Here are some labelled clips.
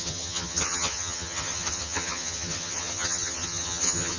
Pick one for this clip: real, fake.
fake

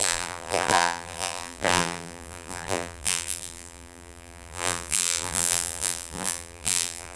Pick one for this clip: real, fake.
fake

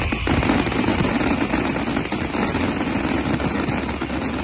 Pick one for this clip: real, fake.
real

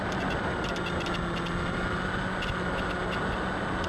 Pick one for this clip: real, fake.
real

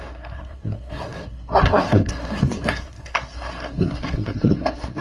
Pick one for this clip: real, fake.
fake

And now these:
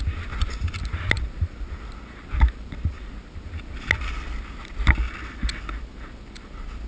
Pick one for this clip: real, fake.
real